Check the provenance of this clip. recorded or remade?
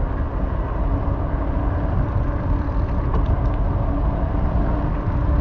recorded